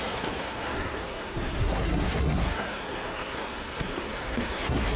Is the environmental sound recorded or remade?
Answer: remade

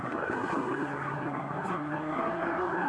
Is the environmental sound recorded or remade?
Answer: remade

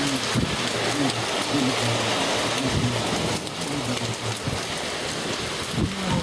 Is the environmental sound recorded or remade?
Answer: recorded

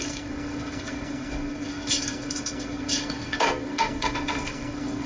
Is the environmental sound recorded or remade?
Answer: remade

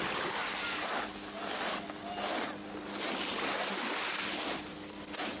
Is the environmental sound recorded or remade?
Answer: recorded